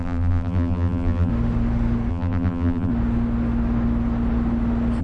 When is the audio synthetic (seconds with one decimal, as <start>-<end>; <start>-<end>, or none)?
0.0-1.3; 2.1-2.9